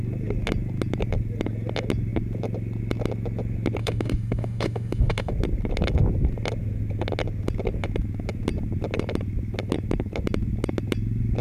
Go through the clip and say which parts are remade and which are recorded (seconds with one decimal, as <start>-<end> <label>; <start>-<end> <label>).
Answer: 0.0-3.8 recorded; 3.8-5.3 remade; 5.3-11.4 recorded